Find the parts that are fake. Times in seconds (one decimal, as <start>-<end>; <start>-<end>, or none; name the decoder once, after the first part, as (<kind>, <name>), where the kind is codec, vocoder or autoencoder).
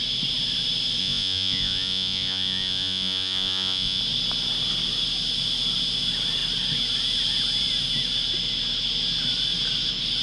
1.0-4.0 (vocoder, Vocos)